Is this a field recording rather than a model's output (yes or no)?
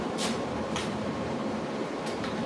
no